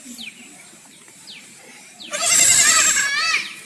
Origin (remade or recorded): remade